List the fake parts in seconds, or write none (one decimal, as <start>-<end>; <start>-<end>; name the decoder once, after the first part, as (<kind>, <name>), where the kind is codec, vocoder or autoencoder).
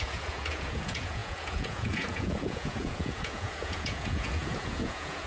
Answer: 0.0-5.3 (vocoder, Vocos)